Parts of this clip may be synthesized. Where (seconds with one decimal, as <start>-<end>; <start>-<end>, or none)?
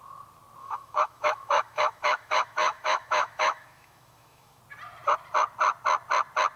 0.6-4.6